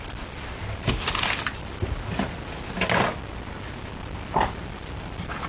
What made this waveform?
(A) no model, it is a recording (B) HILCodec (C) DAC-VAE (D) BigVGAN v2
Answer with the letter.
A